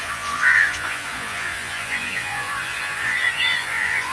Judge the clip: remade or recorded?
remade